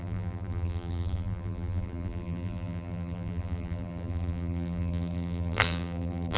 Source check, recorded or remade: remade